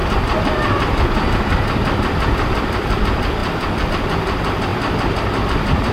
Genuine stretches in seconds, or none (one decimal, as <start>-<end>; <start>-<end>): 0.0-5.9